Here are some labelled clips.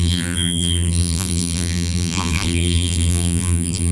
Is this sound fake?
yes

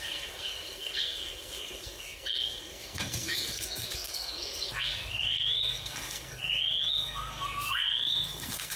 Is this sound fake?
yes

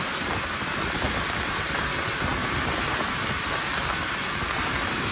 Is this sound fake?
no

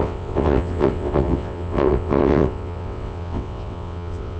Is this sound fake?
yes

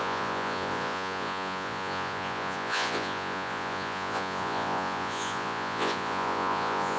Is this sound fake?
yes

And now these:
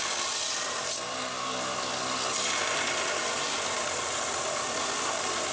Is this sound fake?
no